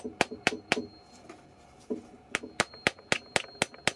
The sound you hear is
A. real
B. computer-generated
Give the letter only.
A